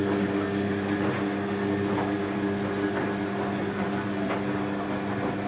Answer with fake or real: real